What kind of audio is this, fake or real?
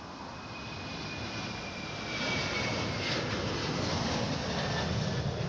real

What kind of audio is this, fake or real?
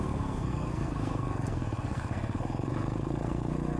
fake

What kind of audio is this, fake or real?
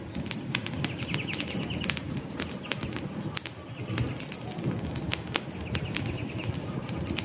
real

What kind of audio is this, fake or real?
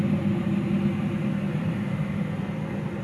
real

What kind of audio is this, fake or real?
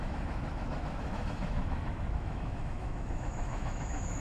fake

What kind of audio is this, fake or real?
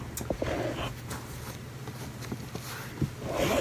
real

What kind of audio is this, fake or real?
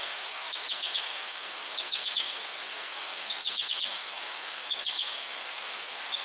fake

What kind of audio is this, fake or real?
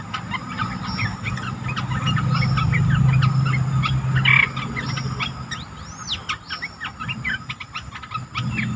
real